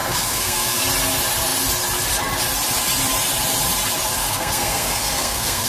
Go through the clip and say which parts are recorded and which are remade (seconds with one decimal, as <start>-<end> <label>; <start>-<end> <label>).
0.0-0.8 remade; 0.8-4.2 recorded; 4.2-5.7 remade